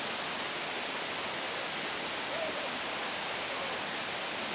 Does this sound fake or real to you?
real